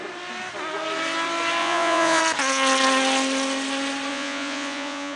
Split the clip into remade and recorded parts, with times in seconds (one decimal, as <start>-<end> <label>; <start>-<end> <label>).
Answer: 0.0-1.6 recorded; 1.6-2.2 remade; 2.2-4.1 recorded; 4.1-5.2 remade